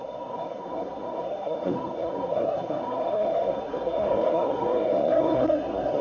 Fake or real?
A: fake